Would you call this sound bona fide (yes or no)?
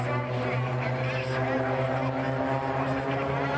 yes